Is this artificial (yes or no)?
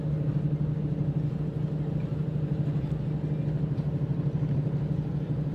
no